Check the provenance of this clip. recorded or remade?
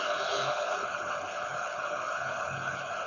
remade